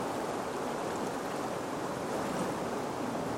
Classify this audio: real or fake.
real